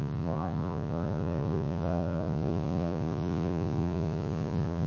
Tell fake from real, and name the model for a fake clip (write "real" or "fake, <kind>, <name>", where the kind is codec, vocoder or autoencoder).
fake, vocoder, Vocos